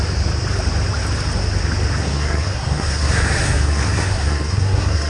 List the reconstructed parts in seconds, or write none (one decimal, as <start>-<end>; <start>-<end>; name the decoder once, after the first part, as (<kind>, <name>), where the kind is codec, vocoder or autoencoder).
2.0-5.1 (codec, SNAC)